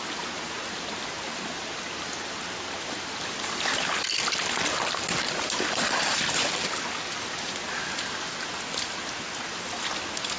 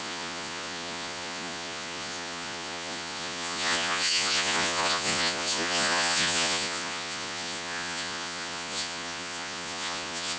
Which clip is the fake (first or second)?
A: second